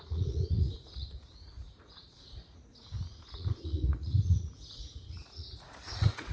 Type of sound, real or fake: fake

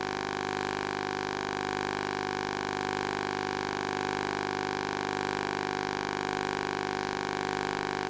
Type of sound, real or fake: real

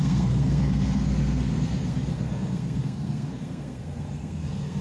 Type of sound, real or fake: fake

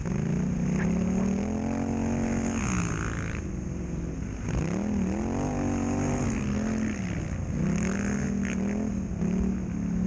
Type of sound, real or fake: real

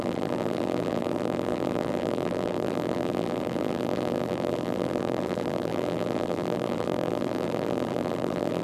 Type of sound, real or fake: fake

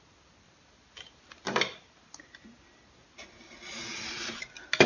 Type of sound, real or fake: real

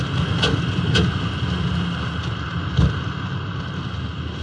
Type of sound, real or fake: real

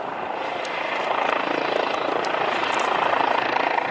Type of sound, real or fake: real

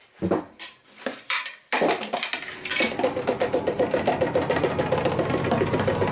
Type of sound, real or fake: real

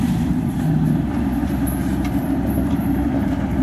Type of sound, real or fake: fake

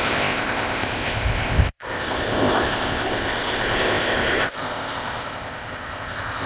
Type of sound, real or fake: fake